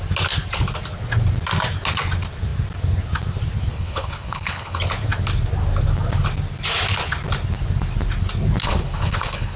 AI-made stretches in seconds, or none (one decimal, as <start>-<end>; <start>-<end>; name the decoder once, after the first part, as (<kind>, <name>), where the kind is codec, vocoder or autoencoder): 3.7-4.8 (codec, HILCodec); 8.6-9.6